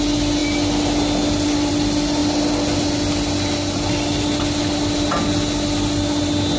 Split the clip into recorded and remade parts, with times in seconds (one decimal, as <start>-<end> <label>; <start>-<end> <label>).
0.0-6.6 recorded